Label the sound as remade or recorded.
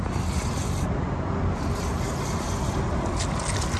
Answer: recorded